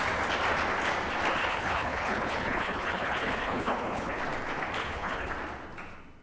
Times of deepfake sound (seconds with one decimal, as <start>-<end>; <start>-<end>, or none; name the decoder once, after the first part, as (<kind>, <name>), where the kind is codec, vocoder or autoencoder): 1.4-4.2 (codec, HILCodec); 4.8-5.3